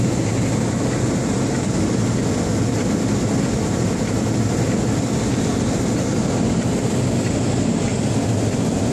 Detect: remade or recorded recorded